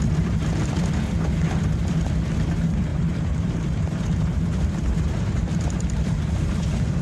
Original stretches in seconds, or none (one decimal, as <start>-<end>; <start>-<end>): 0.0-2.9; 6.6-7.0